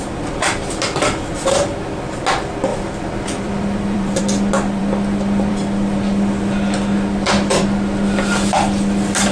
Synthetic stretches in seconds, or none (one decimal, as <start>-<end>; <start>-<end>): 2.7-4.2